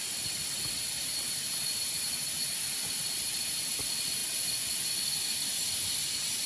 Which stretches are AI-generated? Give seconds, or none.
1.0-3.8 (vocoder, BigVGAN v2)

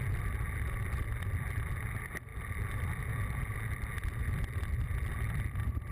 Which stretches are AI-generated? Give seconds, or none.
none

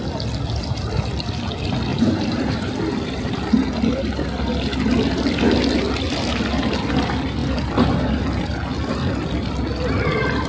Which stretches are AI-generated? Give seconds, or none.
1.9-3.3 (vocoder, BigVGAN v2)

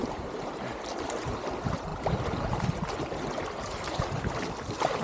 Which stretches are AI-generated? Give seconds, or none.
0.0-0.5 (vocoder, BigVGAN v2)

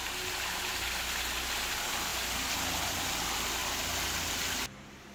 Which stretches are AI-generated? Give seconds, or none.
none

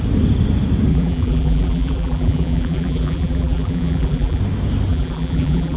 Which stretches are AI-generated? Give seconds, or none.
0.9-4.4 (vocoder, BigVGAN v2); 4.9-5.8